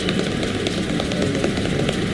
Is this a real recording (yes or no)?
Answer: yes